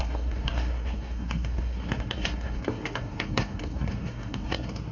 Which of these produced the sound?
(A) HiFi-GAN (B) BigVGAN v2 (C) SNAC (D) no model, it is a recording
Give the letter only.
C